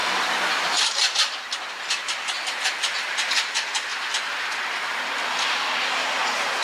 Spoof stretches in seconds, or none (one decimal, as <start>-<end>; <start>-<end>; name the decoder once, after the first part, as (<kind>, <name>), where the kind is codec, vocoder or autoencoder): 0.0-1.0 (vocoder, BigVGAN v2); 3.9-4.4